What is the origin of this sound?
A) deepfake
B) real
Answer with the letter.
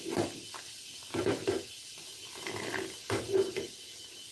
B